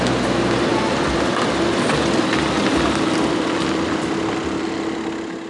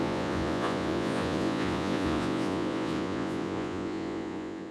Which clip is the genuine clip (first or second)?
first